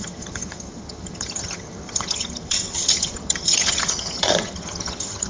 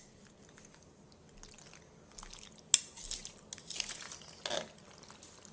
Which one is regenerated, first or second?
first